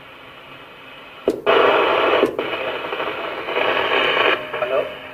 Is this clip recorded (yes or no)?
yes